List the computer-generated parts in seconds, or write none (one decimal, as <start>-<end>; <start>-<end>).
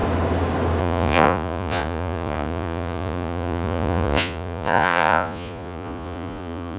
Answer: 0.8-6.8